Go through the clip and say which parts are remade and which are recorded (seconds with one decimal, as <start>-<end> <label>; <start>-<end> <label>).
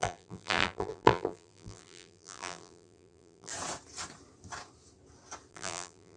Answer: 0.0-3.5 remade; 3.5-5.5 recorded; 5.5-6.2 remade